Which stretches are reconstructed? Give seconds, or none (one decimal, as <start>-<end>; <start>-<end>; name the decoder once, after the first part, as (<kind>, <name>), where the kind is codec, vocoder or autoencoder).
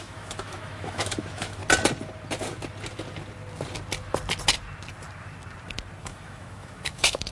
0.0-1.6 (autoencoder, DAC-VAE); 6.0-7.3